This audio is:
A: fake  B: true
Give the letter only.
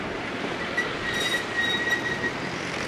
A